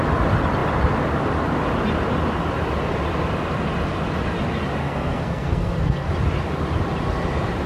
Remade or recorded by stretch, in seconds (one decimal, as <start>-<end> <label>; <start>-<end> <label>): 0.0-4.8 recorded; 4.8-6.1 remade; 6.1-7.7 recorded